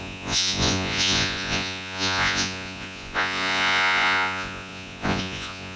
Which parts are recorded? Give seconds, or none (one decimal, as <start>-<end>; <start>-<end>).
none